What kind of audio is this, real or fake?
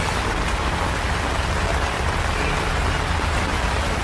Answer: real